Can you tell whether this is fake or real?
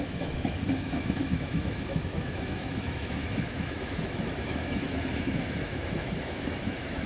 fake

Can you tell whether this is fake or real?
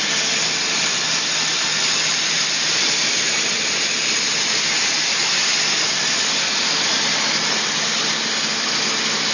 real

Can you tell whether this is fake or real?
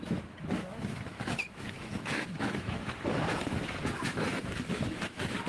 fake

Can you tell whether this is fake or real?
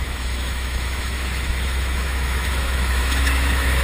fake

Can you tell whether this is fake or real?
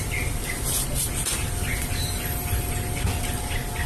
real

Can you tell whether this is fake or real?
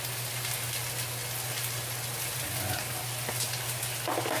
real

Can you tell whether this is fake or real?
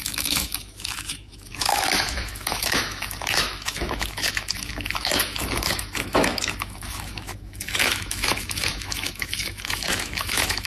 fake